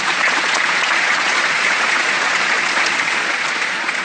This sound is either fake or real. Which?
fake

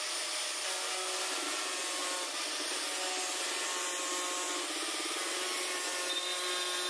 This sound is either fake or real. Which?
real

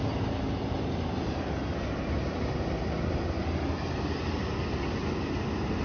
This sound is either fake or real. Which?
real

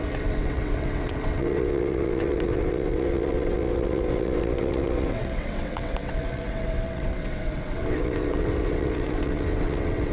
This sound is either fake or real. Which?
fake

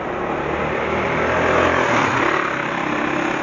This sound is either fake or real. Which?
real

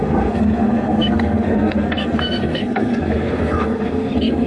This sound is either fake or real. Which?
fake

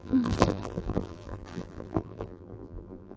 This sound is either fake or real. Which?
fake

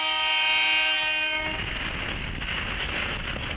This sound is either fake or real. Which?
real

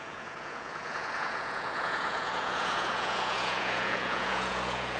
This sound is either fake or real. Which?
fake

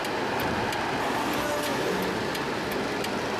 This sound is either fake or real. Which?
real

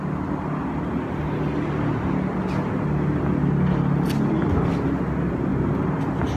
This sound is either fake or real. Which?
real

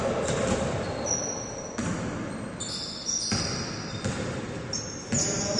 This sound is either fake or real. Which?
real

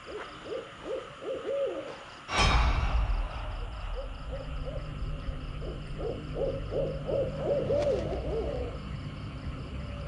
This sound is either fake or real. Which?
real